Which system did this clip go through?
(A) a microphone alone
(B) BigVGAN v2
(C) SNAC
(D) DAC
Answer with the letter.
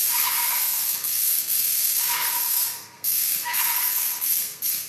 C